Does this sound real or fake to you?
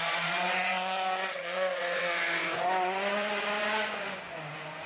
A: fake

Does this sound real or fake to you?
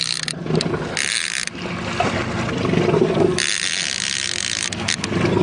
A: real